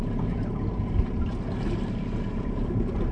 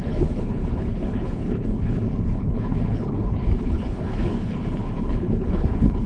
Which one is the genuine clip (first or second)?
first